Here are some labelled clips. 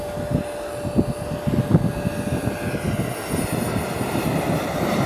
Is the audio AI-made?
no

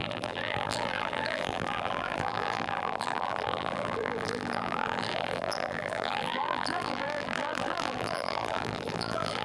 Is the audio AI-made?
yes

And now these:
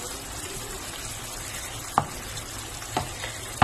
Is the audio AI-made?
yes